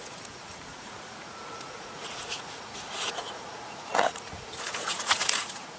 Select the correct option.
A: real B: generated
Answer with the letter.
B